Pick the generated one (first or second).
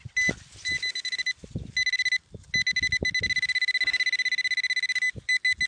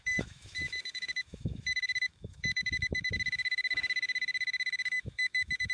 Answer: second